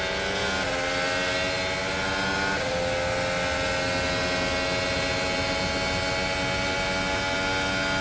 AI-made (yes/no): no